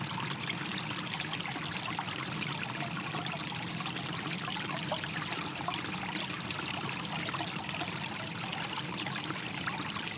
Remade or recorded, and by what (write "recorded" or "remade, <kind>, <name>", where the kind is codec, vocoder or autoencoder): recorded